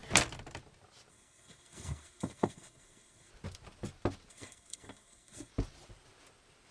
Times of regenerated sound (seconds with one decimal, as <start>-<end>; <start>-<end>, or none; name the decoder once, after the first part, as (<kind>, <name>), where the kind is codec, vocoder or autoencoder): 1.1-3.3 (codec, SNAC); 4.3-5.5